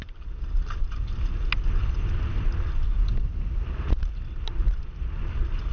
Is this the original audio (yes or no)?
yes